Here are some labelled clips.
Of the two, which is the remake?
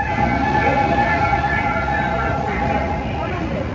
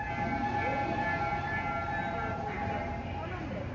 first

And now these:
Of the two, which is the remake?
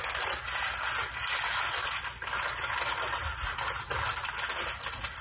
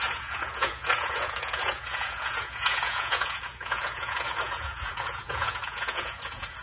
second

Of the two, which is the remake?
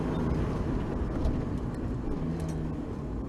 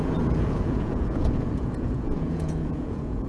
second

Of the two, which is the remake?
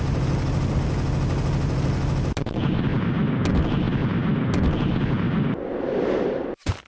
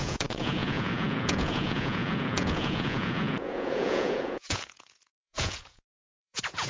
second